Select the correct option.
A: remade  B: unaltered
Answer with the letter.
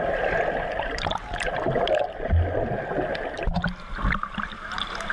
B